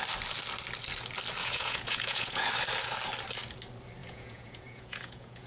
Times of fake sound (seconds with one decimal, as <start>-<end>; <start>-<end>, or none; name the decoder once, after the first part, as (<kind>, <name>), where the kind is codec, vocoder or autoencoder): 1.4-2.5 (vocoder, Vocos); 4.0-5.5